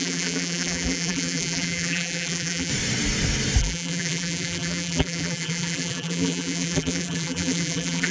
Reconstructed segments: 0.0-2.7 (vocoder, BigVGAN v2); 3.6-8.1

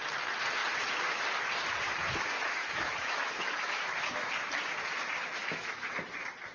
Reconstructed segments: 2.6-4.3 (autoencoder, DAC-VAE); 5.2-5.9

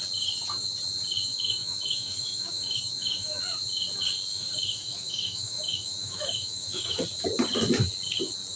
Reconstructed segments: 1.3-3.4 (autoencoder, DAC-VAE); 4.3-7.0

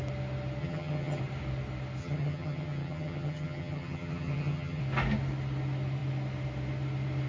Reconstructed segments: 0.6-1.2 (vocoder, HiFi-GAN); 2.0-4.8

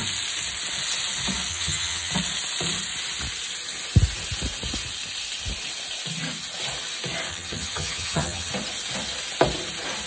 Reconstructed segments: 1.5-2.1 (vocoder, HiFi-GAN); 7.3-8.5

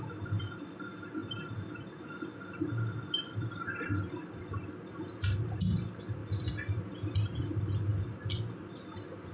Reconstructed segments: none

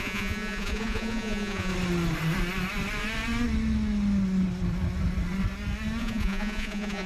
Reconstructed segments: 0.0-1.7 (vocoder, Vocos); 6.0-7.1

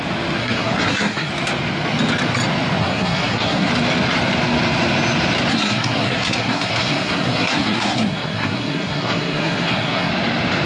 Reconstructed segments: 0.4-1.3 (codec, SNAC); 2.8-3.7; 5.5-10.1